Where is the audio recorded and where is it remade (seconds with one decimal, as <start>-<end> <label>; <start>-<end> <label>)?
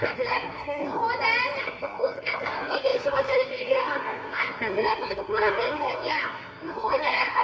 0.0-1.0 remade; 1.0-1.6 recorded; 1.6-7.4 remade